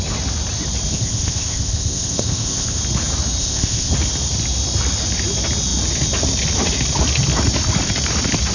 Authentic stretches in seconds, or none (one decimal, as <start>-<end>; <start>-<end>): 0.0-0.9; 2.8-3.4; 3.9-8.5